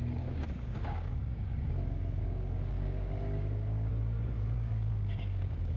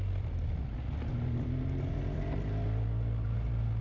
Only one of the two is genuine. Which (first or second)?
second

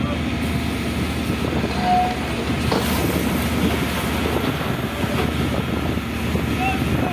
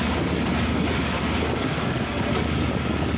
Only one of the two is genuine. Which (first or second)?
first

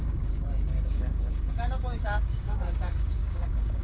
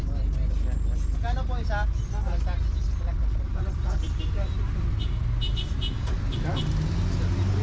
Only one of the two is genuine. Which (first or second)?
second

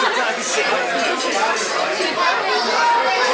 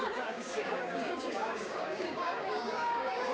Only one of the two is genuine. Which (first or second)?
first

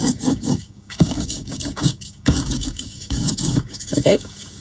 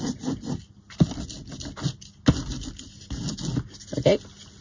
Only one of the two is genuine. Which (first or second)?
second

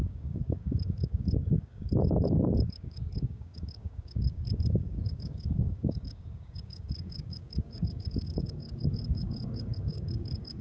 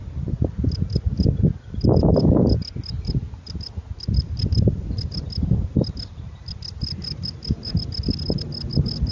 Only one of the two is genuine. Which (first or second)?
second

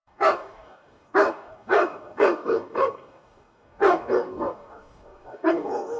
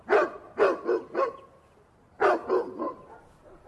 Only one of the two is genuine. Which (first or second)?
second